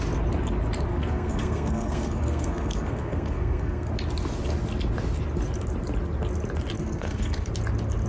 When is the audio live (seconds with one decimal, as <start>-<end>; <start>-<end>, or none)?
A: 0.0-0.9; 3.9-6.8; 7.5-8.1